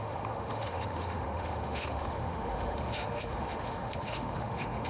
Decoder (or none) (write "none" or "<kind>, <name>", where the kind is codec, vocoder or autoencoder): autoencoder, DAC-VAE